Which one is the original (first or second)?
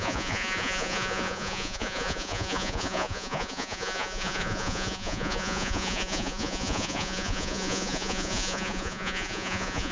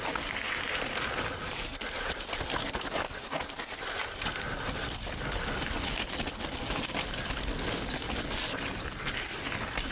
second